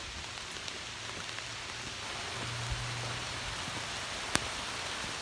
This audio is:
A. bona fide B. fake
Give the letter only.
A